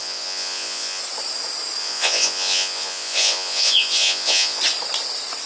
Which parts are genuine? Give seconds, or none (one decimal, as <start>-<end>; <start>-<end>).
1.0-1.8; 4.6-5.5